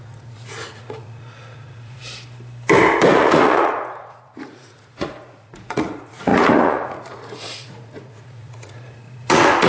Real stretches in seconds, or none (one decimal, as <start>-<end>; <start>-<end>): 2.0-3.1